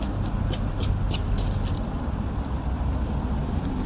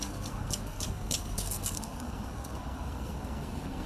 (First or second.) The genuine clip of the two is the first